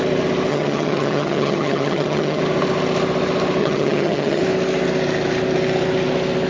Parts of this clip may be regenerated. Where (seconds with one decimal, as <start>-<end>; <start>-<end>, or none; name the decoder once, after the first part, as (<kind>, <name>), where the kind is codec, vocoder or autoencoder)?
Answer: 0.5-2.4 (vocoder, HiFi-GAN); 3.6-4.4